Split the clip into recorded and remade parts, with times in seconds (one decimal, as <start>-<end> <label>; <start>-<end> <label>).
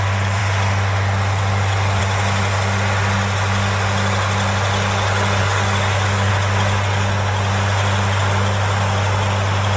0.0-5.4 recorded; 5.4-6.3 remade; 6.3-9.8 recorded